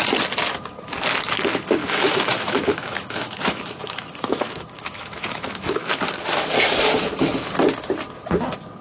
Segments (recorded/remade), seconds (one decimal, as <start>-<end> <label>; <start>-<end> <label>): 0.0-1.8 recorded; 1.8-6.0 remade; 6.0-8.8 recorded